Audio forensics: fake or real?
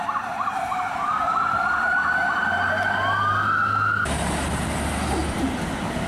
real